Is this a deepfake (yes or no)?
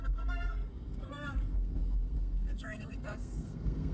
yes